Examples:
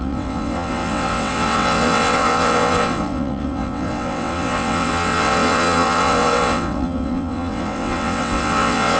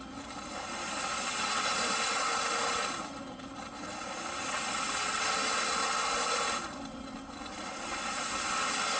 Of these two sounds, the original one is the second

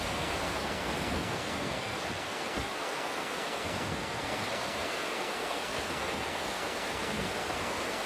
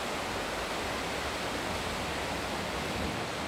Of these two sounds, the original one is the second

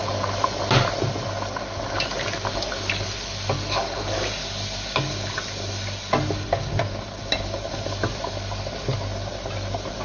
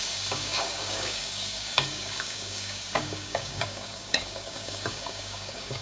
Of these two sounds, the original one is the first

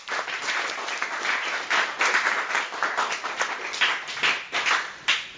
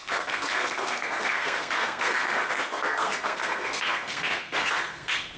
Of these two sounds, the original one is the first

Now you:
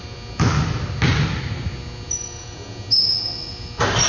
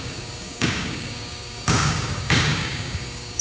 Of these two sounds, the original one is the first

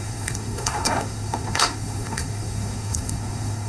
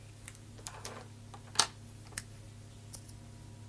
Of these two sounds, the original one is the second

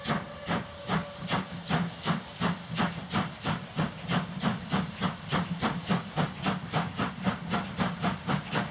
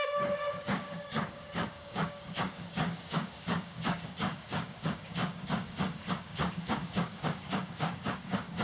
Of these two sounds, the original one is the first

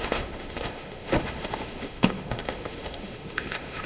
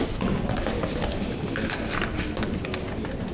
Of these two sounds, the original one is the second